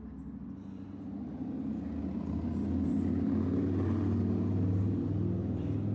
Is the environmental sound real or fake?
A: real